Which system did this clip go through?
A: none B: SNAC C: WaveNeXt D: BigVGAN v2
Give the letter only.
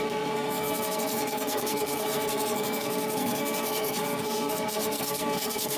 B